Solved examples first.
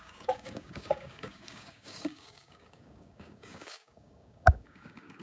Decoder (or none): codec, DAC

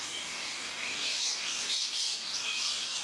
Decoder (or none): codec, DAC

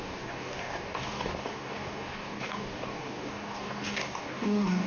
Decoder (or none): codec, DAC